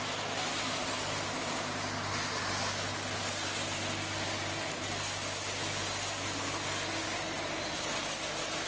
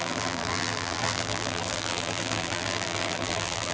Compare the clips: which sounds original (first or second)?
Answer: first